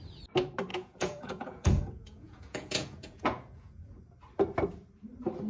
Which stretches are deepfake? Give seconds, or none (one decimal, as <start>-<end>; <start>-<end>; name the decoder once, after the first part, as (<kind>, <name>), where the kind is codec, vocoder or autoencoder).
0.7-4.0 (vocoder, Vocos)

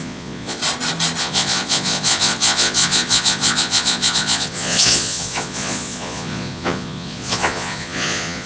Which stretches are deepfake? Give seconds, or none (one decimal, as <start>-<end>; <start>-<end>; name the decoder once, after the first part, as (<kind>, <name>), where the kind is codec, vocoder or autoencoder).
0.0-0.6 (vocoder, Vocos); 1.2-8.5

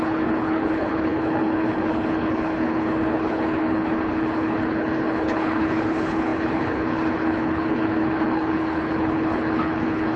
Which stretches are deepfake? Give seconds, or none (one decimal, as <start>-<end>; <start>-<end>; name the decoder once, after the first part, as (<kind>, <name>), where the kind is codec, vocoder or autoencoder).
0.0-10.2 (codec, HILCodec)

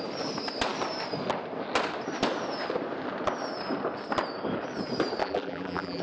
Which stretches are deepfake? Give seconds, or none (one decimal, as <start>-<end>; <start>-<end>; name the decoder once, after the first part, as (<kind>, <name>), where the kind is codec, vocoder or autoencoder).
5.2-6.0 (vocoder, BigVGAN v2)

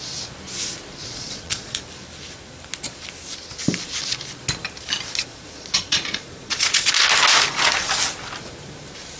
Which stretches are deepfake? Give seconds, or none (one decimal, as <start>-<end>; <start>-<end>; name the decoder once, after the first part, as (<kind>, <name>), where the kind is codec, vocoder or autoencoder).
1.0-1.8 (vocoder, Vocos); 5.3-6.9

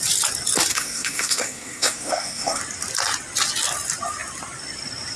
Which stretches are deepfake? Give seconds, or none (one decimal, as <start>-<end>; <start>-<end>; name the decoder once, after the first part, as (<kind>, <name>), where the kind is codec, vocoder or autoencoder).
0.7-2.6 (codec, SNAC)